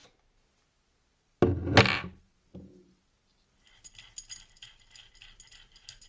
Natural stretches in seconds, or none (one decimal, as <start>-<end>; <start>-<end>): 0.0-6.1